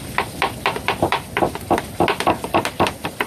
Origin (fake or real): real